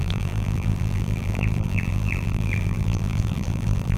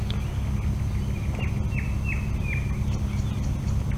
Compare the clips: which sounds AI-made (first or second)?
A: first